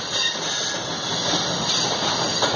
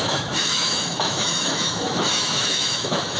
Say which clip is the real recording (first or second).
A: first